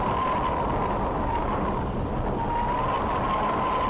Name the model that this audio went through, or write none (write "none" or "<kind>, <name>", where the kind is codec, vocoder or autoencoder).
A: none